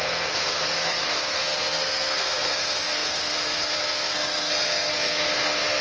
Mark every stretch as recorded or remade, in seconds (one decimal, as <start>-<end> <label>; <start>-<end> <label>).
0.0-5.8 remade